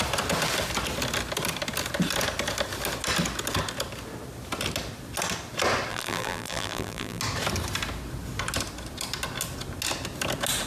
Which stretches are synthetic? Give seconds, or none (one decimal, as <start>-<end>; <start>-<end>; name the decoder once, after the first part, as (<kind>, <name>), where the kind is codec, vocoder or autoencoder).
5.9-7.2 (vocoder, BigVGAN v2)

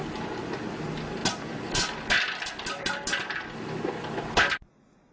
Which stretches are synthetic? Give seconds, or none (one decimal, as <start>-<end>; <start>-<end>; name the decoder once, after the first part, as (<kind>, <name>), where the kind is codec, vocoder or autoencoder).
none